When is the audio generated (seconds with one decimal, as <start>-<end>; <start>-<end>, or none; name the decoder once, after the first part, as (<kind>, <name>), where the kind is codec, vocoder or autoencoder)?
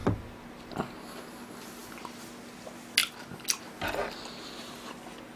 none